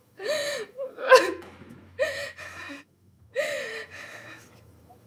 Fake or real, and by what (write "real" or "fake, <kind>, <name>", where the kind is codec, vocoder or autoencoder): fake, autoencoder, DAC-VAE